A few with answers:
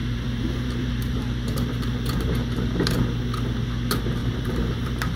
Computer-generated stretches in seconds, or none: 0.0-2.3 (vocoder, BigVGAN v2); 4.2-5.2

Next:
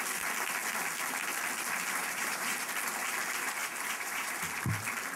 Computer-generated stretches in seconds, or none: 2.0-2.6 (vocoder, BigVGAN v2); 3.6-4.4

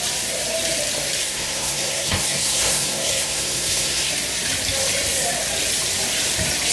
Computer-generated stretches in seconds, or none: 1.2-4.1 (codec, SNAC)

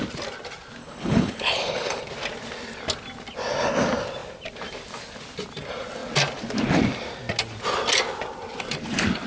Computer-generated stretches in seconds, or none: 0.8-2.0 (codec, HILCodec)

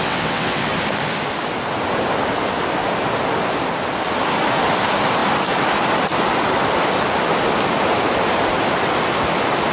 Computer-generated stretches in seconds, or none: 0.0-0.7 (vocoder, WaveNeXt)

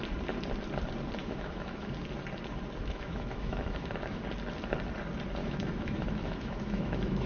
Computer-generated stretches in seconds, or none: 1.2-1.9 (autoencoder, DAC-VAE); 2.8-4.2; 5.4-7.3